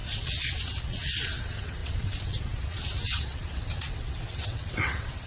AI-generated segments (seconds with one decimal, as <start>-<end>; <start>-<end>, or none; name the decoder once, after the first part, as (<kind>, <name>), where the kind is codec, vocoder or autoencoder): 0.0-5.3 (vocoder, WaveNeXt)